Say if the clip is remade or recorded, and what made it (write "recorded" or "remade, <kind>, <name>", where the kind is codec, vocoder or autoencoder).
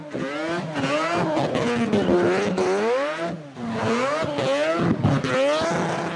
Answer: recorded